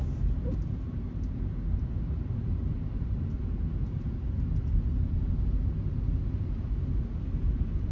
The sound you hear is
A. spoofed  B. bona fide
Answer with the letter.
B